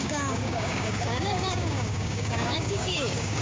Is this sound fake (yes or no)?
yes